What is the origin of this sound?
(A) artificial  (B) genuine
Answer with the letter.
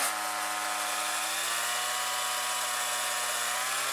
B